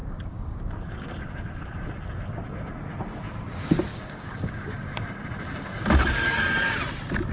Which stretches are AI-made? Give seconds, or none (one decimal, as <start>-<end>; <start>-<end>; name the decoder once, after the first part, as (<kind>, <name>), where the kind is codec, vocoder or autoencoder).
0.0-0.6 (codec, DAC); 3.9-4.9